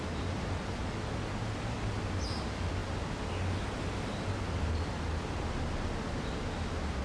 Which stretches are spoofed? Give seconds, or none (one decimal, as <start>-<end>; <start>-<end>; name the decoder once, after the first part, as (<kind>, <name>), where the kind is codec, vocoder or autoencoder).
none